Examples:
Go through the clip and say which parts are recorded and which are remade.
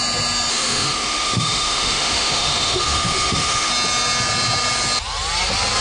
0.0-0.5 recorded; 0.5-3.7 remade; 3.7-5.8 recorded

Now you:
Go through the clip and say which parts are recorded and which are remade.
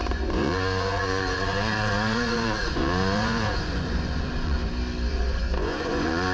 0.0-4.6 remade; 4.6-5.1 recorded; 5.1-6.3 remade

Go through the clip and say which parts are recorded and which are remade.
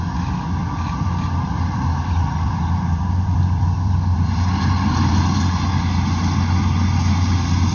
0.0-0.6 recorded; 0.6-5.2 remade; 5.2-7.7 recorded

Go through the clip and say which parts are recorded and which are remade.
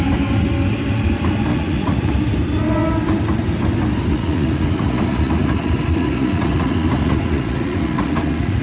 0.0-1.5 recorded; 1.5-2.1 remade; 2.1-4.1 recorded; 4.1-8.6 remade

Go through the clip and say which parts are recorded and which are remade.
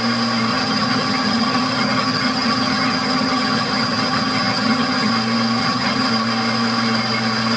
0.0-0.5 recorded; 0.5-5.1 remade; 5.1-5.6 recorded; 5.6-6.1 remade; 6.1-7.6 recorded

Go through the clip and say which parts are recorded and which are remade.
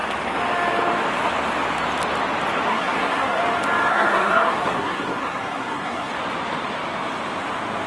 0.0-2.7 recorded; 2.7-3.4 remade; 3.4-3.9 recorded; 3.9-6.1 remade; 6.1-7.9 recorded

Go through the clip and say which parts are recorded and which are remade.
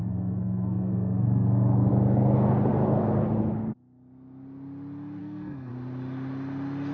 0.0-1.9 remade; 1.9-5.2 recorded; 5.2-5.7 remade; 5.7-6.9 recorded